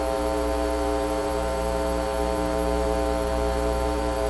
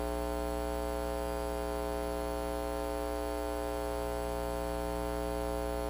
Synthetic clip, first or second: first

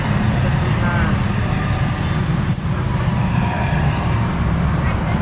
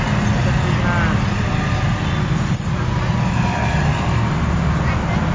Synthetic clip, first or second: first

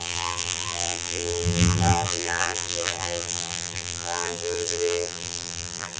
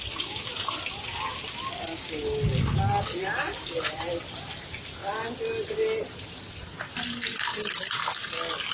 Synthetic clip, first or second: first